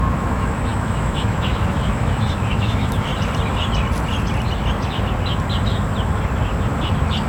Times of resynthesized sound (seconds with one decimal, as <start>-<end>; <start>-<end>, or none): 0.0-3.1